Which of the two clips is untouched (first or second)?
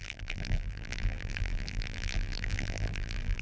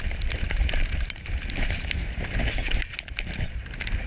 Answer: second